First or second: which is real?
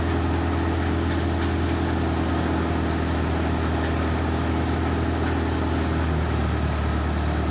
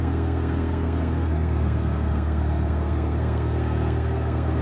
first